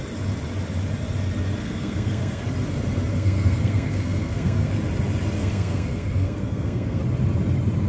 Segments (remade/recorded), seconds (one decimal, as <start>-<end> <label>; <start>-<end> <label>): 0.0-1.6 recorded; 1.6-2.4 remade; 2.4-3.1 recorded; 3.1-4.7 remade; 4.7-5.4 recorded; 5.4-7.0 remade; 7.0-7.9 recorded